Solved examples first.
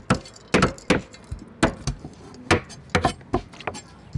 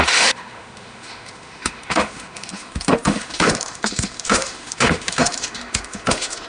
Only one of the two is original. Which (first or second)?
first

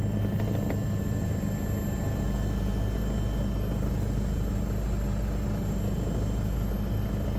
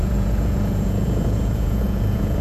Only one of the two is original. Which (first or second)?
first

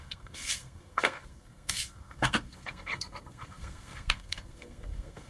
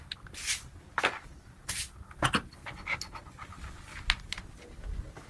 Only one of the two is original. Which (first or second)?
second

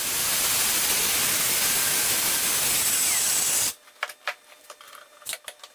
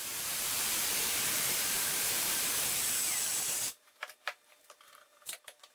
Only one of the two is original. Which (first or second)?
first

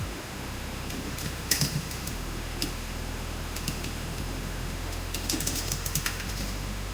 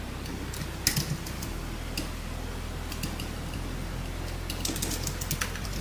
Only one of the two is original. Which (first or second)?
second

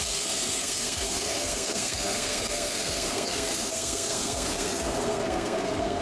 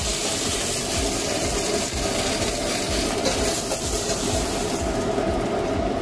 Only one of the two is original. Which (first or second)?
second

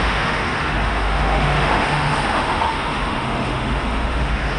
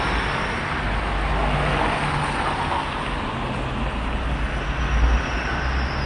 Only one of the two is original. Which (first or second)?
second